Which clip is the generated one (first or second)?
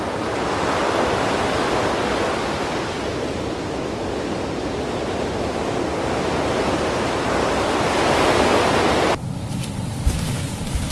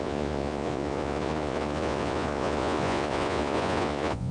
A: second